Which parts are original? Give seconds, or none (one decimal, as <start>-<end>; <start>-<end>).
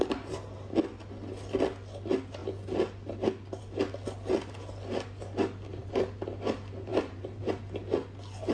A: 0.0-6.9; 7.5-8.5